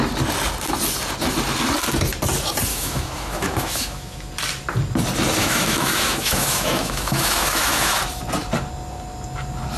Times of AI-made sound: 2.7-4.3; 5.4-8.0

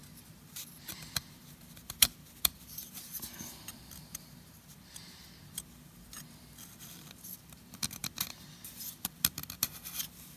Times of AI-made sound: 0.0-10.4

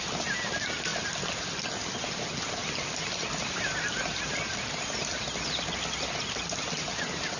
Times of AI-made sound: none